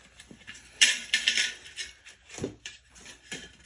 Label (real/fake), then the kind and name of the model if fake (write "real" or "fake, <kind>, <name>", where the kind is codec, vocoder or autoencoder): fake, vocoder, BigVGAN v2